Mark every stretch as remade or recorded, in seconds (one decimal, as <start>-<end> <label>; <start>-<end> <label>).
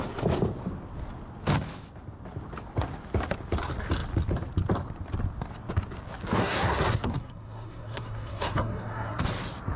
0.0-6.4 recorded; 6.4-9.2 remade; 9.2-9.8 recorded